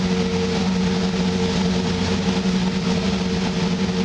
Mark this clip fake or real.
real